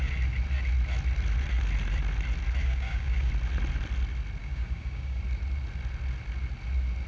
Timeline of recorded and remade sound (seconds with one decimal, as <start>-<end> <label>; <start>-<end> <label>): 0.0-2.6 recorded; 2.6-3.3 remade; 3.3-4.4 recorded; 4.4-5.2 remade; 5.2-7.1 recorded